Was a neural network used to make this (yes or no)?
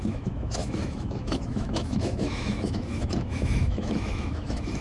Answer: yes